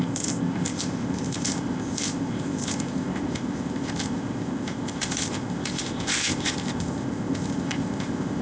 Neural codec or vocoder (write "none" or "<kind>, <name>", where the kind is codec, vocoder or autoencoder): codec, ZipCodec